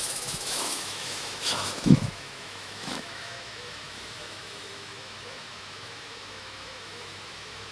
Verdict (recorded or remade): remade